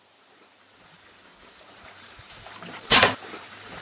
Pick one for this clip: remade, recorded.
remade